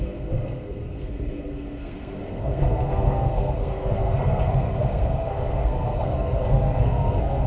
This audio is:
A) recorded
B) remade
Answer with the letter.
B